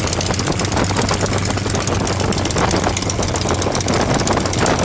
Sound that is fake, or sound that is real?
real